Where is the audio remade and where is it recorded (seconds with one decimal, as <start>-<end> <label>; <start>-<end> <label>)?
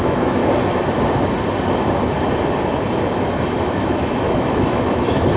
0.0-0.4 remade; 0.4-3.6 recorded; 3.6-5.4 remade